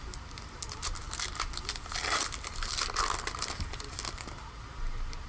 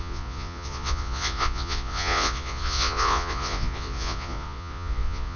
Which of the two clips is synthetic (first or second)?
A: second